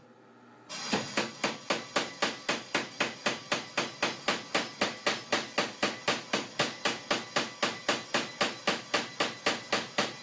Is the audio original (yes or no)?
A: yes